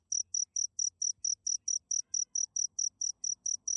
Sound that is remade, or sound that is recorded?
recorded